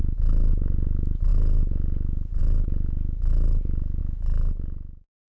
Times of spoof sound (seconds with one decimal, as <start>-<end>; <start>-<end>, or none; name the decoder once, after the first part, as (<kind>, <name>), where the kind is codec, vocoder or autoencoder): none

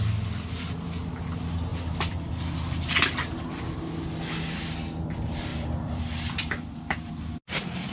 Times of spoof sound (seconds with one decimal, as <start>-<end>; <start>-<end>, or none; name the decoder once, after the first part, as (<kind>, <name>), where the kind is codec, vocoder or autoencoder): 1.7-2.3 (vocoder, BigVGAN v2); 5.5-7.1

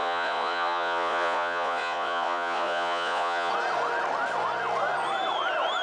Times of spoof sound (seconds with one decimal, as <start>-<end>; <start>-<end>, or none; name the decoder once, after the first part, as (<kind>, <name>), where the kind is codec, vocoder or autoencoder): 0.0-3.5 (vocoder, Vocos)

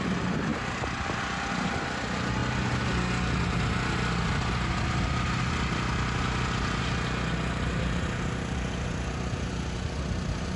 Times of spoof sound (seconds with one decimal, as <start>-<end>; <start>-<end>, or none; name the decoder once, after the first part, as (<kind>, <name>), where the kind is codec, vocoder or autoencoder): none

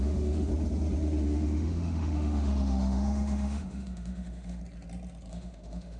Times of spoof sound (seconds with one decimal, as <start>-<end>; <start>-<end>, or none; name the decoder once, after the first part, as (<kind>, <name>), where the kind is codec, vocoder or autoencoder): 0.0-0.5 (autoencoder, DAC-VAE); 1.2-4.6; 5.3-6.0

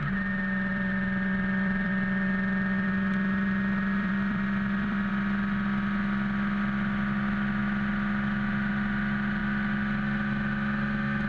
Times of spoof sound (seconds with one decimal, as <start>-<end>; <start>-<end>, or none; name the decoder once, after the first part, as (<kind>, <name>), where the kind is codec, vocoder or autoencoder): 0.7-5.1 (vocoder, BigVGAN v2)

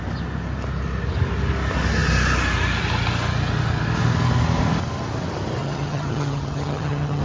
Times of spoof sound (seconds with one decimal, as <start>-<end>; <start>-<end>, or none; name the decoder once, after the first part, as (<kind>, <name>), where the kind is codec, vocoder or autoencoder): 5.6-7.2 (vocoder, HiFi-GAN)